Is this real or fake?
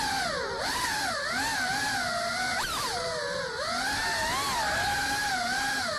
real